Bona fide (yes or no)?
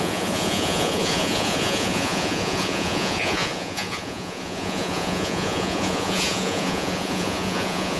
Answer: no